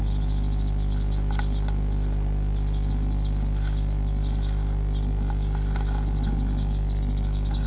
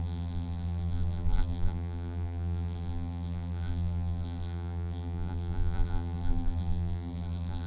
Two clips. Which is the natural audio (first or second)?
first